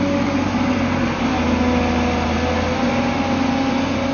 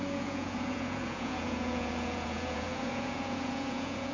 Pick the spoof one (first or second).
second